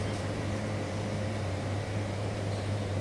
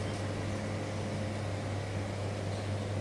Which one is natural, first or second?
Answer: second